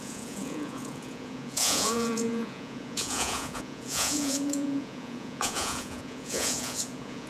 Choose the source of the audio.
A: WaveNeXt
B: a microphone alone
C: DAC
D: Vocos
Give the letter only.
D